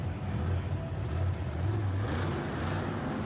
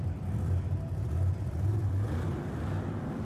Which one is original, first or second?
first